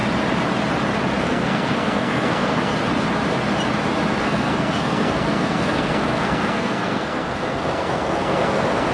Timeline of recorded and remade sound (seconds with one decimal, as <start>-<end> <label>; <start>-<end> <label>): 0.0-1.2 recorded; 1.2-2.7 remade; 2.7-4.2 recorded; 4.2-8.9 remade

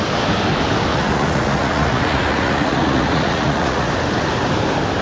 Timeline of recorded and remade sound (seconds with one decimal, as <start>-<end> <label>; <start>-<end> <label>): 0.0-0.9 recorded; 0.9-3.9 remade; 3.9-5.0 recorded

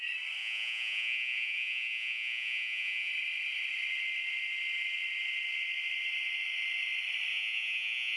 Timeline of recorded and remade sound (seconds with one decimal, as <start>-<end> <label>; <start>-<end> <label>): 0.0-0.4 recorded; 0.4-3.1 remade; 3.1-7.3 recorded; 7.3-8.2 remade

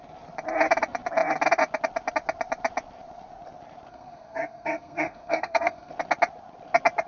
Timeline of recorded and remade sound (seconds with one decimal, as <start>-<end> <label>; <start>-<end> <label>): 0.0-3.9 recorded; 3.9-5.9 remade; 5.9-7.1 recorded